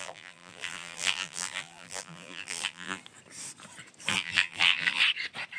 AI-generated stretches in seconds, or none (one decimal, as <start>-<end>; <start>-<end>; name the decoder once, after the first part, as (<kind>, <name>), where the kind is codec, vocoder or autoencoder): 0.0-3.0 (vocoder, BigVGAN v2); 4.1-5.0

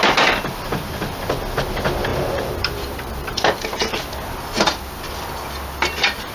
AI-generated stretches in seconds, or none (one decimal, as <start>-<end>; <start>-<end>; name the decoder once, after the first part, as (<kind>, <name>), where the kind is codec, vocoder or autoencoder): 2.1-4.0 (vocoder, BigVGAN v2)

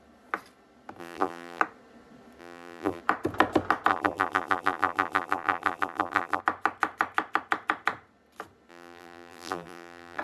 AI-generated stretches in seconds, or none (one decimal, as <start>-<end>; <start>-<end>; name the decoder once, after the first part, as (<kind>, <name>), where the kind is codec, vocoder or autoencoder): 1.0-1.6 (vocoder, BigVGAN v2); 2.4-3.0; 3.9-6.4; 8.7-10.2

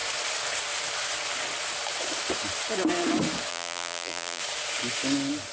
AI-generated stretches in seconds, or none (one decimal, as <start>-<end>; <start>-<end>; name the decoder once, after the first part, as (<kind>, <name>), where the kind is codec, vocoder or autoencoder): 3.5-4.4 (vocoder, BigVGAN v2)